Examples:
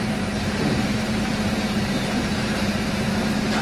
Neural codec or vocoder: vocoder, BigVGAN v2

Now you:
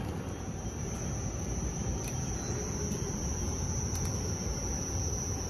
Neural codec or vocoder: vocoder, BigVGAN v2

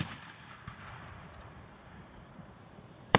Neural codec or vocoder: vocoder, BigVGAN v2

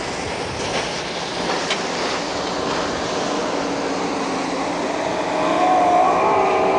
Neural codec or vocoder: none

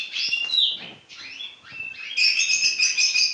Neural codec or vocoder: none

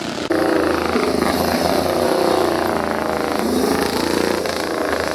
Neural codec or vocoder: vocoder, BigVGAN v2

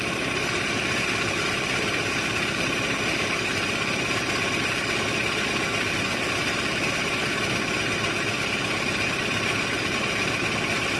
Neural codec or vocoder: vocoder, BigVGAN v2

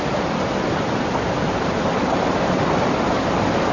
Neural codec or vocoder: vocoder, BigVGAN v2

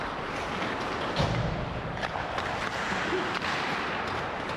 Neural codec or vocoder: vocoder, BigVGAN v2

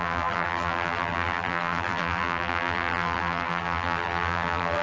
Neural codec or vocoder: vocoder, BigVGAN v2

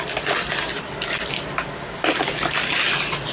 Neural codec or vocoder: none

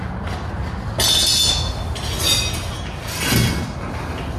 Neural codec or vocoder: none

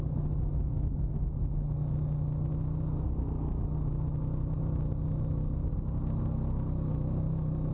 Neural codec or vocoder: none